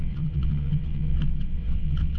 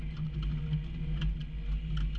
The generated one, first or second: first